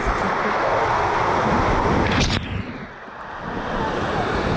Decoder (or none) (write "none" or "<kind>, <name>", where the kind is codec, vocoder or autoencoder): none